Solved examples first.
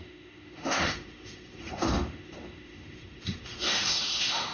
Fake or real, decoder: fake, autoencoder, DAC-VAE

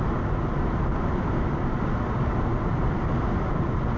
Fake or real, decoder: real